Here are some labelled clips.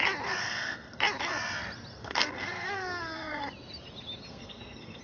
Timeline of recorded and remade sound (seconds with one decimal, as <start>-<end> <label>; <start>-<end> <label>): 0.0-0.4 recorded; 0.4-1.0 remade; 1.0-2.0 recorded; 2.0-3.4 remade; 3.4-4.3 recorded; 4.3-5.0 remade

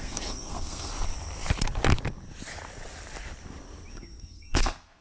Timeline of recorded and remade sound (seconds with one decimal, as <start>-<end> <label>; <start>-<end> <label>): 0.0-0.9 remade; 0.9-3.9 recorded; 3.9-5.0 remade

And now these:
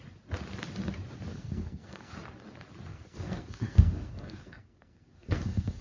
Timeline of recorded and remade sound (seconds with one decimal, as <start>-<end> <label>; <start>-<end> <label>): 0.0-1.3 recorded; 1.3-2.1 remade; 2.1-2.9 recorded; 2.9-5.8 remade